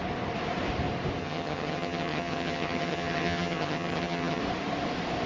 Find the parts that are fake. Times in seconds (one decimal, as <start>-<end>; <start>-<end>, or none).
1.2-4.4